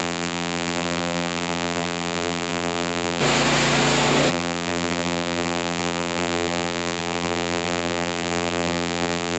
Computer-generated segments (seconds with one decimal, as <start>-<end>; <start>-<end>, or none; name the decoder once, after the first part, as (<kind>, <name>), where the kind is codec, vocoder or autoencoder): 0.0-3.2 (vocoder, BigVGAN v2); 4.3-9.4